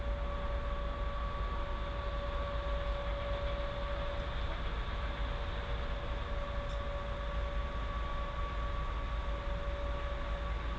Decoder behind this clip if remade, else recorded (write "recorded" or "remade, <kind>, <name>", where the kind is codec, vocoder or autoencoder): recorded